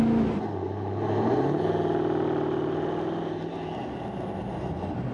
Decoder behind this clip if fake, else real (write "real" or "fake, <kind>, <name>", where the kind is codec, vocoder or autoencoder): real